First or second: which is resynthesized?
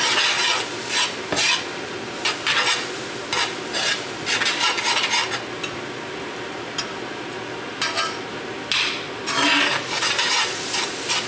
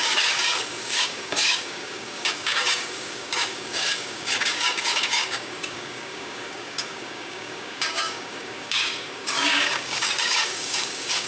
second